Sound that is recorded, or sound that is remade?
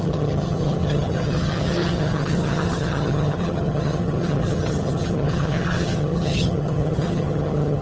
remade